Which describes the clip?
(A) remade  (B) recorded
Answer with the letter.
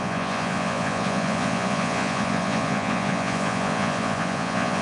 A